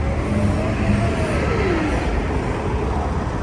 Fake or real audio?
real